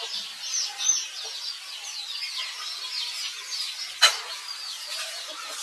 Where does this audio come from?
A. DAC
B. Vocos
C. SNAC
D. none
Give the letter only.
D